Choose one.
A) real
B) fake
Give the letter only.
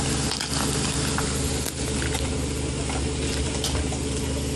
A